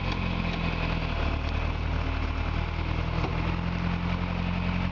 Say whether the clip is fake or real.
real